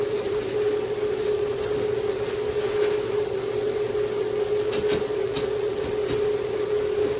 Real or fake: real